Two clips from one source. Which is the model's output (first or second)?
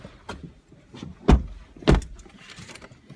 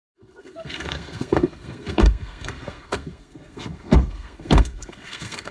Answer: second